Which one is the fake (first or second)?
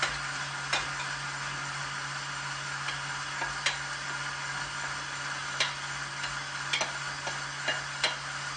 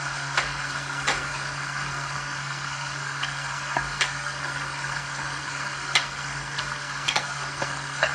second